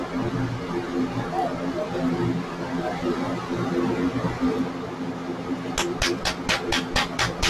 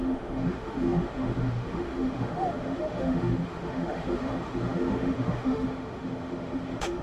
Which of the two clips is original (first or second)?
first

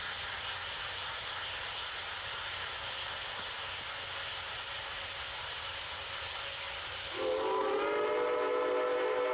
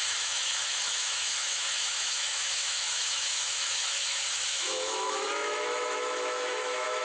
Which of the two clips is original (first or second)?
first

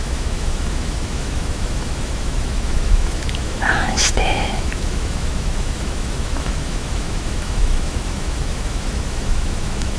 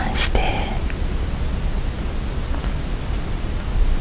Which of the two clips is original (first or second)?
second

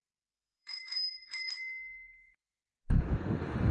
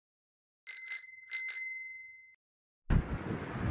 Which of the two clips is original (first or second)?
second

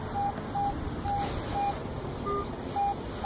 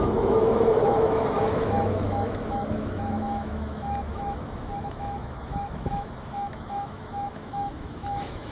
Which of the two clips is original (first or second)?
first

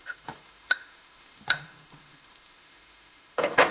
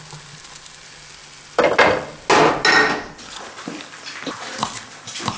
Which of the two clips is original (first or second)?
second